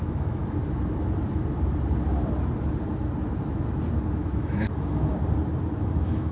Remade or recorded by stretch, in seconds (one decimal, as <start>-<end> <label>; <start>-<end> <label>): 0.0-0.4 remade; 0.4-4.2 recorded; 4.2-5.1 remade; 5.1-5.7 recorded; 5.7-6.3 remade